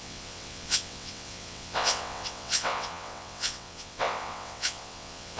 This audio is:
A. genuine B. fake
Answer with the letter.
B